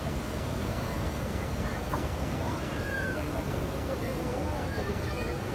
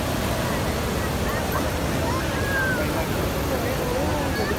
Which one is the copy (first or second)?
first